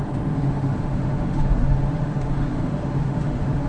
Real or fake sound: fake